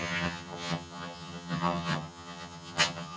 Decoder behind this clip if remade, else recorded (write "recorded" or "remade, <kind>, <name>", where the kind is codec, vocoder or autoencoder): remade, vocoder, HiFi-GAN